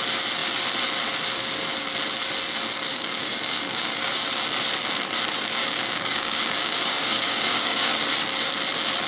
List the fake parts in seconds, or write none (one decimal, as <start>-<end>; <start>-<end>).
2.9-4.1; 5.6-8.0